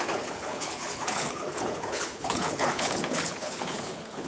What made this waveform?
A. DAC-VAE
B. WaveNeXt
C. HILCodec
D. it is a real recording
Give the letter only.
C